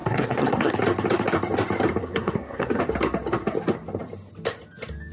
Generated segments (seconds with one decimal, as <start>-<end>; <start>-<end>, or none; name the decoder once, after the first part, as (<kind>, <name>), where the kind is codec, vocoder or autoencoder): 0.0-0.7 (codec, SNAC); 2.0-2.8